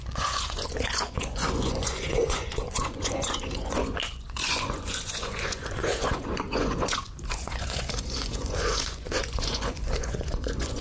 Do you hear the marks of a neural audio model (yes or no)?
yes